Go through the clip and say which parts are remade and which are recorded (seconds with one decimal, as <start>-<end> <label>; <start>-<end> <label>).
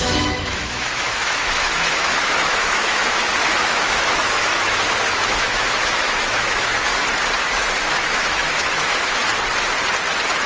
0.0-6.9 remade; 6.9-7.4 recorded; 7.4-9.2 remade; 9.2-10.5 recorded